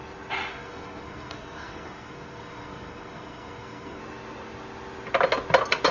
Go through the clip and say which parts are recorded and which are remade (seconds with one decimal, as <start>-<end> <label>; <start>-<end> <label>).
0.0-0.5 recorded; 0.5-4.0 remade; 4.0-5.9 recorded